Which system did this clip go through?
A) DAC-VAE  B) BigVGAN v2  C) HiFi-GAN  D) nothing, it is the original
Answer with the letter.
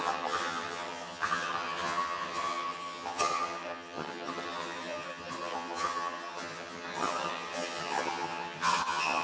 C